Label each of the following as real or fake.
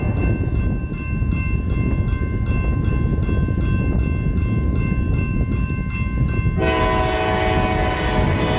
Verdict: real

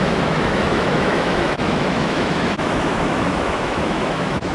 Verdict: fake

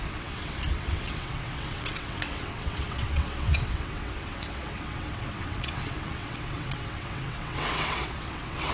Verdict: fake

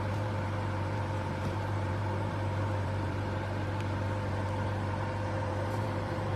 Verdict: fake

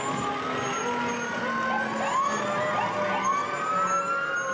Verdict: real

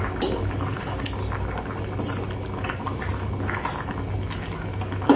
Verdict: real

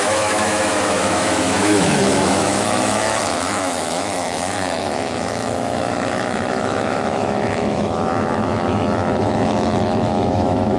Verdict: fake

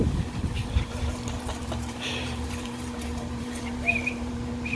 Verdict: fake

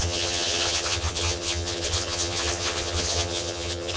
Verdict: fake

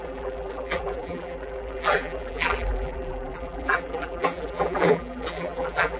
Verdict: fake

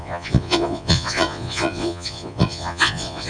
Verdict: fake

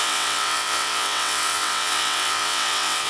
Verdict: fake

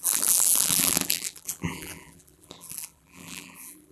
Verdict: fake